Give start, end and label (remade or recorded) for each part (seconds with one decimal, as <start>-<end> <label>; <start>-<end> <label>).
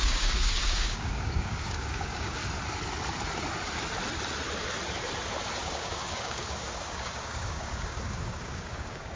0.0-2.4 remade; 2.4-5.6 recorded; 5.6-9.2 remade